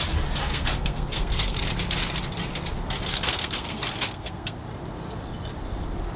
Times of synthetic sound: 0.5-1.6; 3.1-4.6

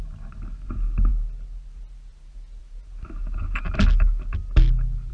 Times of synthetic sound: none